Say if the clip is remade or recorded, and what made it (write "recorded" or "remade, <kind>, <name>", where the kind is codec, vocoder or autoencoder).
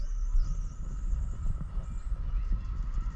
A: recorded